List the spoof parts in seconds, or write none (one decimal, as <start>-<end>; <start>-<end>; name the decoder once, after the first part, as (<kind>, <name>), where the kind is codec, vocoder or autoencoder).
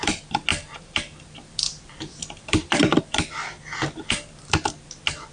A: 0.5-3.0 (vocoder, BigVGAN v2)